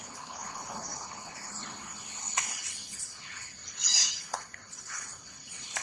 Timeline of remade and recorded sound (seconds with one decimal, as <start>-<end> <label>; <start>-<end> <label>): 0.0-5.8 remade